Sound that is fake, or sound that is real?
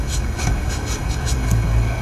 fake